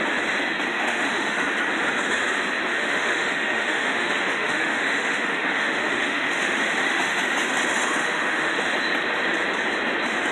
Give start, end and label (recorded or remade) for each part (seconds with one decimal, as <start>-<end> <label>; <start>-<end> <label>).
0.0-0.7 recorded; 0.7-1.4 remade; 1.4-2.7 recorded; 2.7-7.2 remade; 7.2-8.0 recorded; 8.0-8.6 remade; 8.6-10.3 recorded